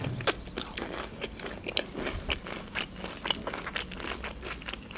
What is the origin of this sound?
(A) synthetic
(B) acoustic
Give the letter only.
B